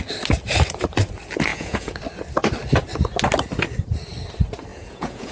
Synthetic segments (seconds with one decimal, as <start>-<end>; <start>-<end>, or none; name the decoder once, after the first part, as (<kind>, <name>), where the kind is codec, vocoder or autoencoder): 1.5-2.0 (vocoder, Vocos); 4.7-5.3